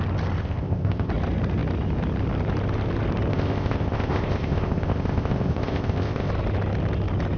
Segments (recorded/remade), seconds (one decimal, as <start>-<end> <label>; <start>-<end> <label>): 0.0-0.4 recorded; 0.4-1.1 remade; 1.1-3.3 recorded; 3.3-6.3 remade; 6.3-7.4 recorded